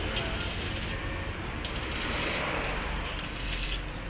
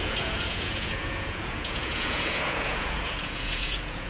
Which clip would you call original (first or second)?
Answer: first